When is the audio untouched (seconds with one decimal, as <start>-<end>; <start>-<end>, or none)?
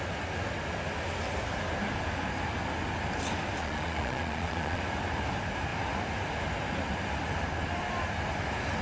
0.0-3.6; 4.8-8.8